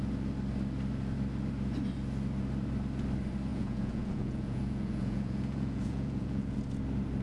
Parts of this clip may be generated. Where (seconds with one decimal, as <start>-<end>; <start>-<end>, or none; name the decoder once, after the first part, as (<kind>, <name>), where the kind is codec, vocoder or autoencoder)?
3.5-6.6 (vocoder, Vocos)